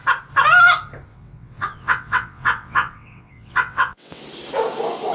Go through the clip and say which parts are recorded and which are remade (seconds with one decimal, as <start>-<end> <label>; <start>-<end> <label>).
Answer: 0.0-1.1 recorded; 1.1-4.2 remade; 4.2-5.1 recorded